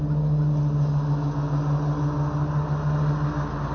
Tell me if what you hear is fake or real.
real